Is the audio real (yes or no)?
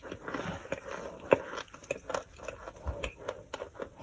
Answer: yes